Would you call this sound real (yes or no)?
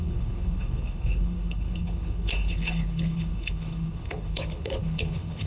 no